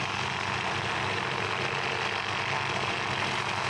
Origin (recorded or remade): recorded